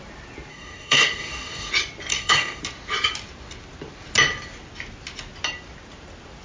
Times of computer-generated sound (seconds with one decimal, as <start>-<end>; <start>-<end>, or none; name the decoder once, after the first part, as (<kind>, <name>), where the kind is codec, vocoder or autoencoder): 0.5-1.7 (codec, DAC); 2.1-2.6